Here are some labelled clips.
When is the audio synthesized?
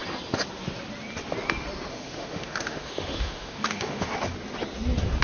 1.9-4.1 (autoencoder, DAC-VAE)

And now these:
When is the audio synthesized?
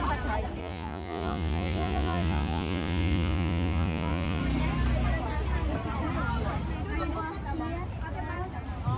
0.6-4.4 (vocoder, Vocos)